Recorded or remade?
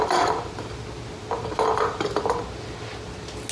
recorded